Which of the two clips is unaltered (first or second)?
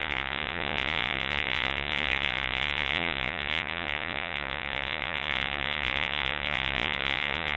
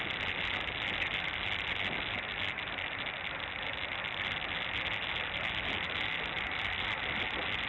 second